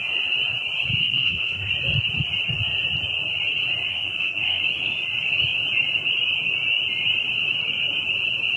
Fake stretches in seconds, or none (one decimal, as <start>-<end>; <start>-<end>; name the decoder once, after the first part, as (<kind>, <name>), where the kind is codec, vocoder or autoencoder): 1.0-1.7 (codec, SNAC); 3.9-4.6